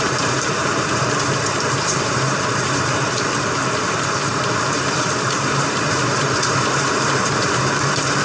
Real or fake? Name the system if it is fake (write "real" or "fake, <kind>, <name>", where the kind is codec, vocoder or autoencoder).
fake, vocoder, BigVGAN v2